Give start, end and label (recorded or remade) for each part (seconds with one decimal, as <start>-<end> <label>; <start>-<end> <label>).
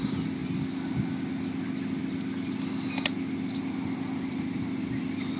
0.0-5.4 recorded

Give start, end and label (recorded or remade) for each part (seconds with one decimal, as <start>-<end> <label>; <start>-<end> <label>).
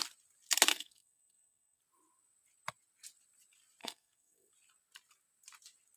0.0-0.7 recorded; 0.7-1.8 remade; 1.8-3.8 recorded; 3.8-4.5 remade; 4.5-6.0 recorded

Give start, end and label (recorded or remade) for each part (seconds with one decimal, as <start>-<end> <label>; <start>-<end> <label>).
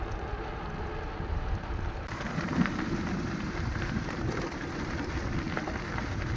0.0-1.3 recorded; 1.3-5.1 remade; 5.1-6.4 recorded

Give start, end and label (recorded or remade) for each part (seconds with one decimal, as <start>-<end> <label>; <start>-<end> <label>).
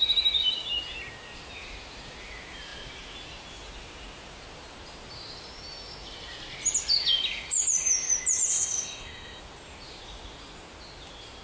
0.0-8.5 recorded; 8.5-9.4 remade; 9.4-11.4 recorded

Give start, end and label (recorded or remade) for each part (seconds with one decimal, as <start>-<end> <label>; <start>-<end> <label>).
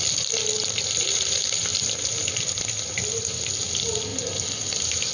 0.0-5.1 recorded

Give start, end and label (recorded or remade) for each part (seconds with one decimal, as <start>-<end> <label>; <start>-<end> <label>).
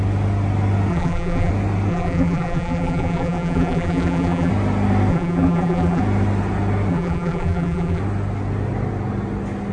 0.0-0.9 recorded; 0.9-1.5 remade; 1.5-1.9 recorded; 1.9-4.5 remade; 4.5-5.1 recorded; 5.1-6.0 remade; 6.0-6.9 recorded; 6.9-8.0 remade; 8.0-9.7 recorded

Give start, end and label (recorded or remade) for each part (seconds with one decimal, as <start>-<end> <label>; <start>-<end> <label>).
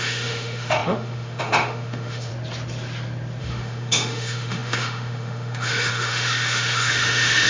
0.0-2.3 remade; 2.3-3.4 recorded; 3.4-7.5 remade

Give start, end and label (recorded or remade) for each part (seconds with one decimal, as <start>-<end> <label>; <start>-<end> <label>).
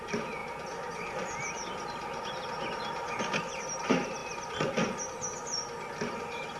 0.0-0.4 remade; 0.4-3.8 recorded; 3.8-4.2 remade; 4.2-6.6 recorded